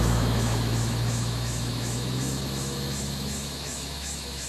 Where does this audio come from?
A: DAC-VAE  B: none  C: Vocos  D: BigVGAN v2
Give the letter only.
A